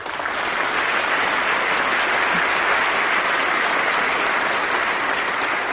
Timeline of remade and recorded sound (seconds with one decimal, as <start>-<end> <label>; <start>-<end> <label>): 0.0-5.7 recorded